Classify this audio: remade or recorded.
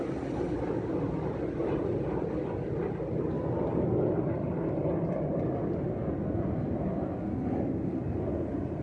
recorded